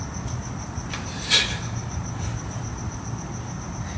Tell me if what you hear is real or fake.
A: real